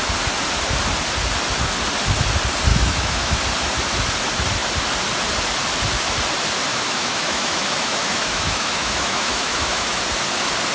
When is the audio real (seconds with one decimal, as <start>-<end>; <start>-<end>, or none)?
0.0-2.7; 3.4-6.7; 10.0-10.7

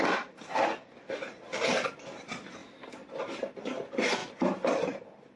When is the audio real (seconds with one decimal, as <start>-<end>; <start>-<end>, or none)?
0.0-5.4

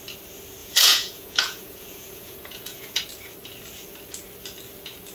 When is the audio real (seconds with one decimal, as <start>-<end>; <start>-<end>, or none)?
0.0-0.6; 3.0-5.1

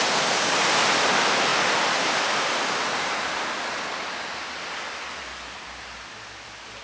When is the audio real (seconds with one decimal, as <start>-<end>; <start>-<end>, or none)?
0.0-6.8

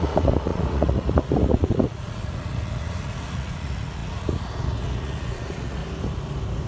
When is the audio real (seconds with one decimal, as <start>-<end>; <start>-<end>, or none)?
5.8-6.7

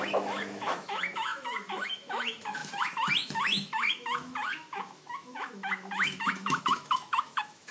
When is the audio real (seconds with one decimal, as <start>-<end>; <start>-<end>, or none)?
none